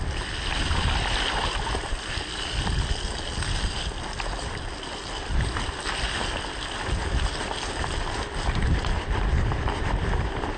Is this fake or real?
real